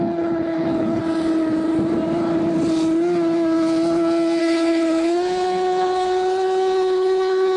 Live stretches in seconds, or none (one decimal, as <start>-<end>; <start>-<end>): 1.0-4.4